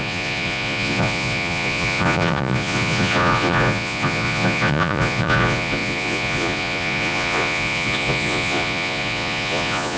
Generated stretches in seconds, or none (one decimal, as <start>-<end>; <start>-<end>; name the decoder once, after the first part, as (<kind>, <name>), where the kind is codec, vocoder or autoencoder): 0.0-10.0 (vocoder, Vocos)